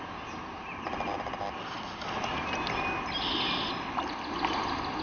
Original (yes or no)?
yes